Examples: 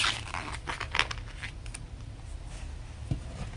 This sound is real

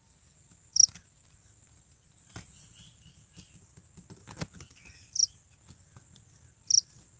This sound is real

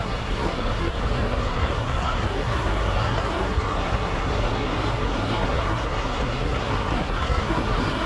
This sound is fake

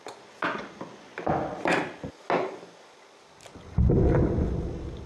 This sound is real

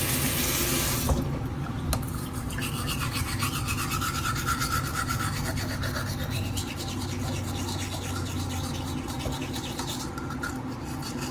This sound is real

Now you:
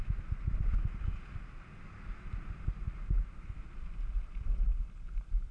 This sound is real